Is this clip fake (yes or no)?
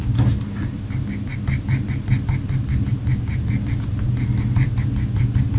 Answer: no